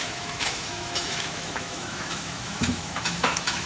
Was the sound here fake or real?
fake